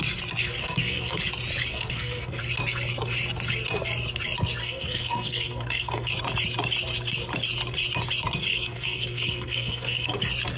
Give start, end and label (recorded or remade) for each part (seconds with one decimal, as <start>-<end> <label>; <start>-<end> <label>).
0.0-0.6 recorded; 0.6-1.2 remade; 1.2-1.7 recorded; 1.7-2.4 remade; 2.4-4.6 recorded; 4.6-6.1 remade; 6.1-8.5 recorded; 8.5-10.2 remade; 10.2-10.6 recorded